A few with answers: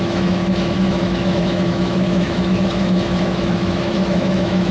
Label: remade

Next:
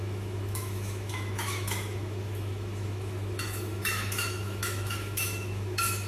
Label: remade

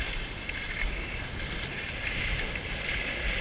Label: recorded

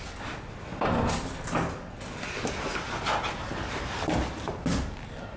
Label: recorded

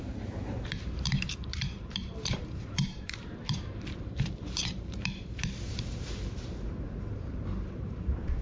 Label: remade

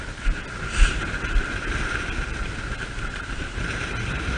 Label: recorded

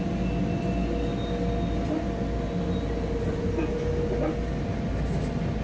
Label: recorded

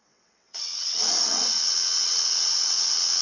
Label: remade